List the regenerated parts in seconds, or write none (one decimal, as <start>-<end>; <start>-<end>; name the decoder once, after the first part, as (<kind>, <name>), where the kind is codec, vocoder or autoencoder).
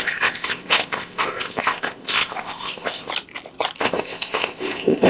0.0-3.1 (codec, ZipCodec); 3.8-5.1